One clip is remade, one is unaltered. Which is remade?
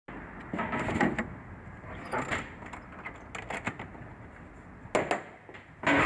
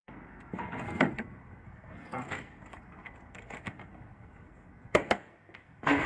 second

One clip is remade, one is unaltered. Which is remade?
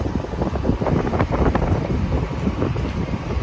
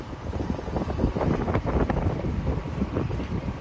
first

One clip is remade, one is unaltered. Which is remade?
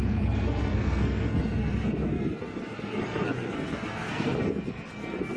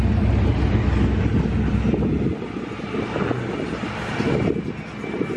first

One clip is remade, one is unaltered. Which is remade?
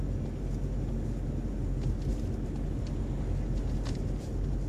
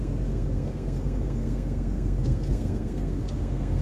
second